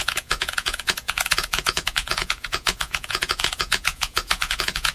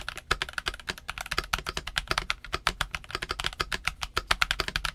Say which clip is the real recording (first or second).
second